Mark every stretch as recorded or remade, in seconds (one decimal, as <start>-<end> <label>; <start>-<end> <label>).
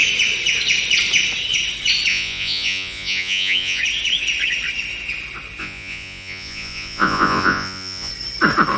0.0-2.1 recorded; 2.1-3.8 remade; 3.8-5.6 recorded; 5.6-8.1 remade; 8.1-8.8 recorded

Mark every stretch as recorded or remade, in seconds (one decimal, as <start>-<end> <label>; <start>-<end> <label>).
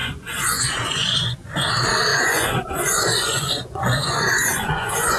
0.0-1.7 remade; 1.7-2.1 recorded; 2.1-5.2 remade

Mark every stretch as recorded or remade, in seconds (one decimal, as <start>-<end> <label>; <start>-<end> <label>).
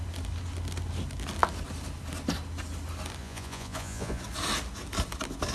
0.0-3.2 recorded; 3.2-4.2 remade; 4.2-5.5 recorded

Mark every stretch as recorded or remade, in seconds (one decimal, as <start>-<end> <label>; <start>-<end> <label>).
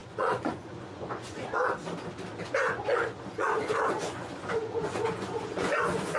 0.0-1.6 remade; 1.6-2.5 recorded; 2.5-6.2 remade